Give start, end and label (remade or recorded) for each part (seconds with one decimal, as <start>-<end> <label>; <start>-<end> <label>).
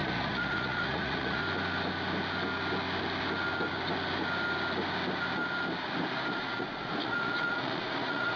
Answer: 0.0-1.4 remade; 1.4-6.3 recorded; 6.3-8.4 remade